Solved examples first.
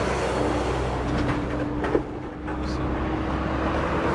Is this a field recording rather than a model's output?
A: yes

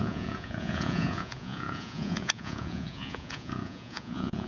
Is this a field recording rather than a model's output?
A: no